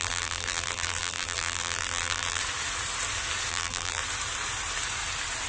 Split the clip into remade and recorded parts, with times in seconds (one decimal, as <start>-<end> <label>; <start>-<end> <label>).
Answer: 0.0-2.4 remade; 2.4-3.5 recorded; 3.5-4.0 remade; 4.0-5.5 recorded